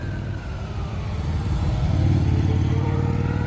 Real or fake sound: fake